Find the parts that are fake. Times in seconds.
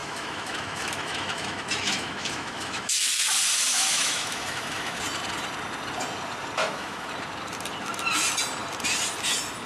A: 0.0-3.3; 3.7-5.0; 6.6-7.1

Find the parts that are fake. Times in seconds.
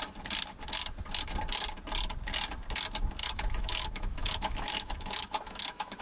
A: 3.2-6.0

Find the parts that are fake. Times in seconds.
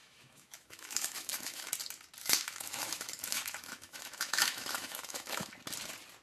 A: 0.0-1.7; 2.2-5.5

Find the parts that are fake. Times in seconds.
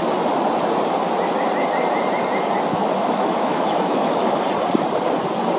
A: 2.7-4.4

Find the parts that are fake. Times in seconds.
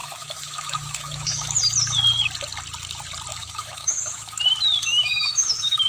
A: 0.0-1.6; 3.3-4.4; 4.9-5.9